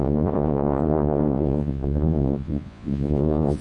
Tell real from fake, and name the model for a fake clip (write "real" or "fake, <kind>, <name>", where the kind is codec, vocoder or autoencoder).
fake, vocoder, Vocos